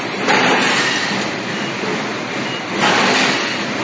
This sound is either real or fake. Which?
real